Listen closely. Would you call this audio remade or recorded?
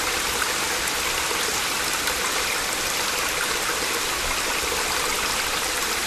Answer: recorded